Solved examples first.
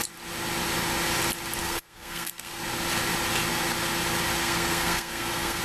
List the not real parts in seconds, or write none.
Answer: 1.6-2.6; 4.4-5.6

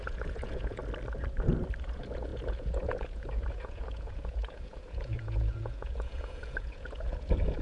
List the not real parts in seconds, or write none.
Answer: 0.0-0.8; 1.8-7.6

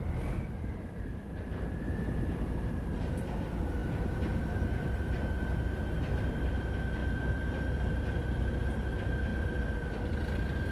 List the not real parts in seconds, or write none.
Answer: 0.0-10.7

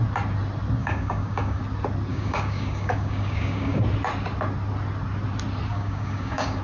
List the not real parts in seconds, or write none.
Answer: 0.8-1.6; 2.1-3.8; 5.7-6.6

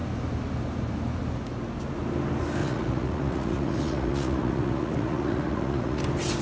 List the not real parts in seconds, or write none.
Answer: 2.6-6.0

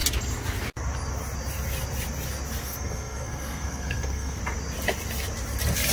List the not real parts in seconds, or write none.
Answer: 2.6-4.4

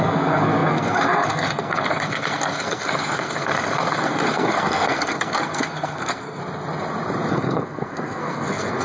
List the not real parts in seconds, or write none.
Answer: 0.0-6.4; 7.3-8.8

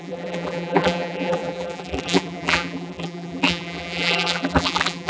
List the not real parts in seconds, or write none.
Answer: 0.0-5.1